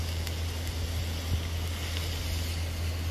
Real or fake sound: real